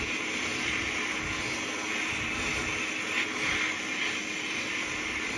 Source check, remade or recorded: recorded